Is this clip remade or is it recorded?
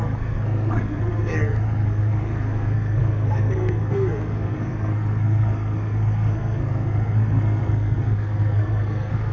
remade